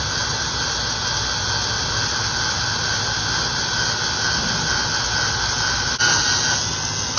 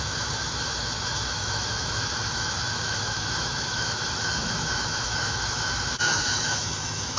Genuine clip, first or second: first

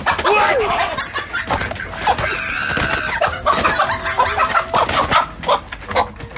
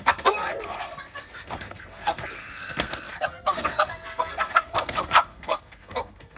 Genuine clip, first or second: first